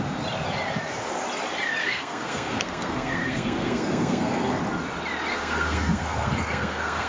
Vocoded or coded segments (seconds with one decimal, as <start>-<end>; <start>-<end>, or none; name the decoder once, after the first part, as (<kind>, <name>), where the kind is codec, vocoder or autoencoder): 1.8-4.6 (codec, SNAC); 5.3-7.1